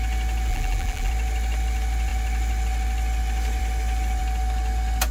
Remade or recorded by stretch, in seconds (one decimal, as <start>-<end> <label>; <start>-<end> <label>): 0.0-0.5 recorded; 0.5-1.1 remade; 1.1-5.1 recorded